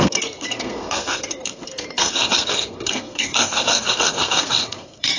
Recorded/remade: remade